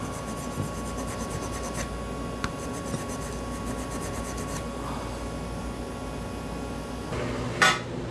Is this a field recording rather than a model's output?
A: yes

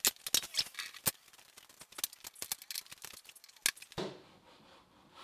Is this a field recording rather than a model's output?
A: yes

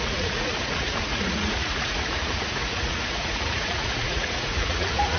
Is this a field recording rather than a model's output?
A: no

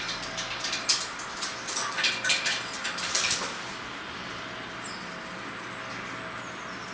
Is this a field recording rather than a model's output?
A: yes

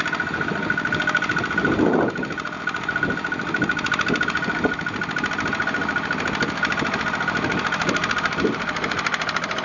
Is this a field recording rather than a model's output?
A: yes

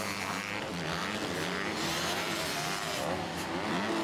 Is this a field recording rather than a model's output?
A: yes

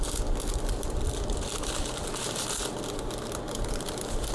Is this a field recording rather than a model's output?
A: yes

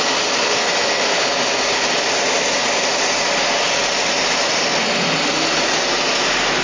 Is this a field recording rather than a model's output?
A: yes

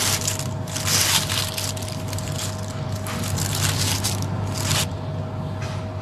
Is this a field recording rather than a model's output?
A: yes